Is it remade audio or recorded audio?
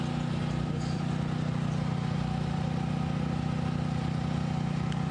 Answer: recorded